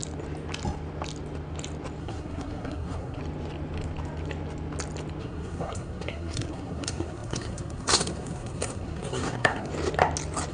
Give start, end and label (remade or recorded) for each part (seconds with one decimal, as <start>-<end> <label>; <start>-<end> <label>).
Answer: 0.0-2.0 recorded; 2.0-3.2 remade; 3.2-5.2 recorded; 5.2-9.7 remade; 9.7-10.5 recorded